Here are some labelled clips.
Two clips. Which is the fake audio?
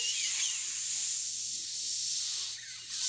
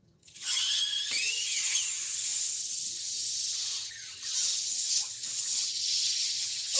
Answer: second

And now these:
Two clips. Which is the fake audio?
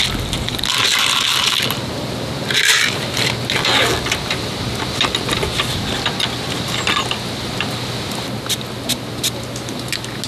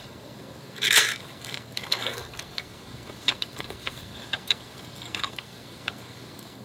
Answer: second